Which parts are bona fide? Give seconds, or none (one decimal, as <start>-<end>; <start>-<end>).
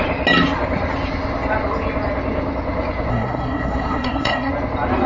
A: 0.0-3.1; 4.5-5.1